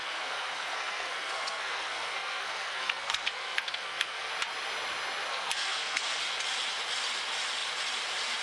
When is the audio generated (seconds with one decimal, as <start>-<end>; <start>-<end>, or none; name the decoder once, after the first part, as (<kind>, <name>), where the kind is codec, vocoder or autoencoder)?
0.0-4.3 (codec, SNAC); 5.3-6.2